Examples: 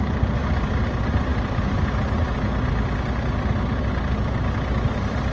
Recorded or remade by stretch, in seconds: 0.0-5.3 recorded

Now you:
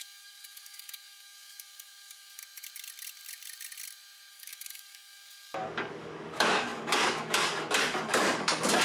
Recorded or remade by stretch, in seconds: 0.0-2.4 remade; 2.4-4.3 recorded; 4.3-8.8 remade